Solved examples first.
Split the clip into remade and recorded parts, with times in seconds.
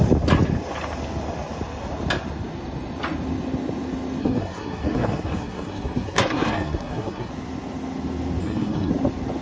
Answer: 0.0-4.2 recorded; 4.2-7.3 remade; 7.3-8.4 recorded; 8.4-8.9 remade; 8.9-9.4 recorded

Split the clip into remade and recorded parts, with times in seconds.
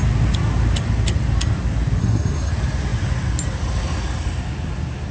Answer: 0.0-2.0 recorded; 2.0-2.5 remade; 2.5-5.1 recorded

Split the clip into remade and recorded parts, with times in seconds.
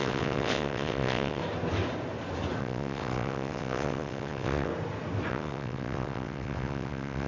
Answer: 0.0-1.4 remade; 1.4-2.6 recorded; 2.6-4.7 remade; 4.7-5.3 recorded; 5.3-7.3 remade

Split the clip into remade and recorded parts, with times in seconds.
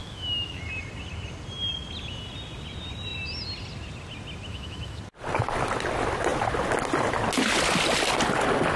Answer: 0.0-0.6 remade; 0.6-4.5 recorded; 4.5-5.0 remade; 5.0-8.8 recorded